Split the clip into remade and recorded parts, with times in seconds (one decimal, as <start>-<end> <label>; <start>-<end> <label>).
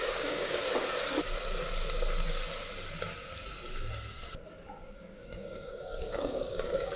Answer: 0.0-0.6 remade; 0.6-4.8 recorded; 4.8-7.0 remade